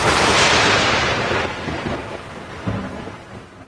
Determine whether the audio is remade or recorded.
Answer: remade